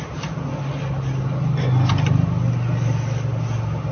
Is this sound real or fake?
real